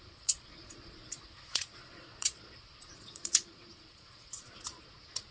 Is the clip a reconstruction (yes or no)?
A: yes